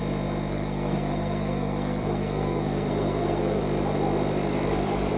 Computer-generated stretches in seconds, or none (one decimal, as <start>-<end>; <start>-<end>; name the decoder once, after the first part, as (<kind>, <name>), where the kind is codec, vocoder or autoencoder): 0.5-3.6 (codec, SNAC)